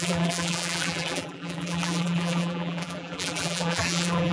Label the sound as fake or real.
fake